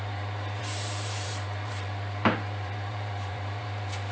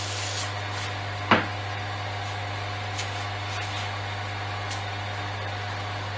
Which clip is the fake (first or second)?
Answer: first